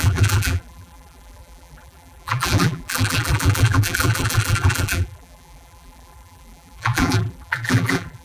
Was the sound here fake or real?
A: fake